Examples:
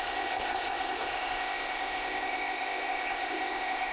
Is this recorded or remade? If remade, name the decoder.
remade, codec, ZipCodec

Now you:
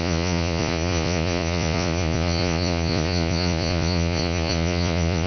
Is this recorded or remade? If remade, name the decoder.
remade, vocoder, Vocos